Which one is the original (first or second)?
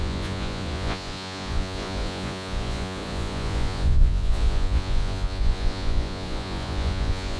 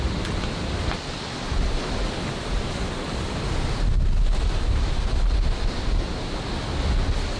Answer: second